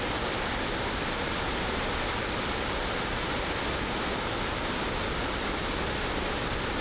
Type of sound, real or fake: real